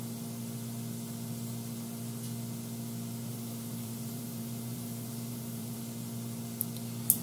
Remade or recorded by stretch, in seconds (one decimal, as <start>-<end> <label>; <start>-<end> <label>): 0.0-3.3 recorded; 3.3-5.8 remade; 5.8-7.2 recorded